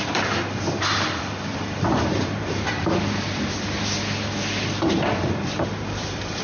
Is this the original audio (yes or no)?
no